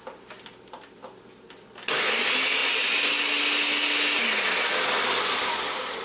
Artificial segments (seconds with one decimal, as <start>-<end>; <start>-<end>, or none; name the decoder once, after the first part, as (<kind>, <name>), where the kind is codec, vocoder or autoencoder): none